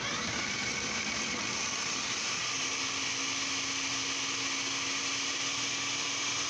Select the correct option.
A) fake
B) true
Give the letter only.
B